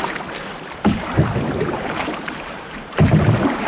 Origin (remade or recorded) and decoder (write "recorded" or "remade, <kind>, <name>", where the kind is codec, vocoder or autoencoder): remade, vocoder, BigVGAN v2